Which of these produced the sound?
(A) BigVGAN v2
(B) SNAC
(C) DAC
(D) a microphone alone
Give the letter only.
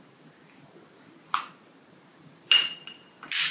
A